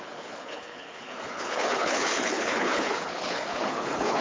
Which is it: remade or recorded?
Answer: remade